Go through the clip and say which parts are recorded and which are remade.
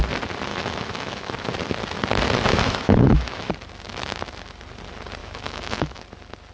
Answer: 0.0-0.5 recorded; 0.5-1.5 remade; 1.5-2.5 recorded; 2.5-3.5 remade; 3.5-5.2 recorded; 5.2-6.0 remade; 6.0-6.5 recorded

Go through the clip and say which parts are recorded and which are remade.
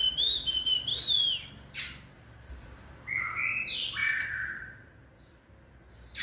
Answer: 0.0-4.0 recorded; 4.0-5.5 remade; 5.5-6.2 recorded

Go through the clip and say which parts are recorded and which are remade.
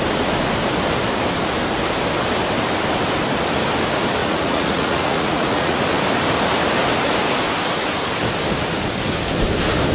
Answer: 0.0-4.2 recorded; 4.2-5.8 remade; 5.8-9.9 recorded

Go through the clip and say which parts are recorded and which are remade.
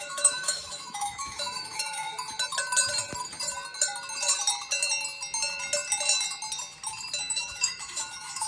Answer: 0.0-2.1 remade; 2.1-7.2 recorded; 7.2-8.5 remade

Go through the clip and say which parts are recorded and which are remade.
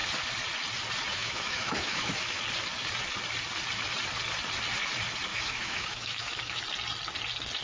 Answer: 0.0-1.1 recorded; 1.1-2.4 remade; 2.4-5.3 recorded; 5.3-6.6 remade; 6.6-7.6 recorded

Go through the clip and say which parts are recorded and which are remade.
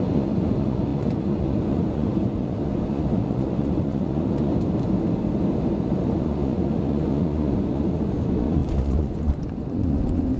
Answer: 0.0-4.5 remade; 4.5-5.7 recorded; 5.7-10.4 remade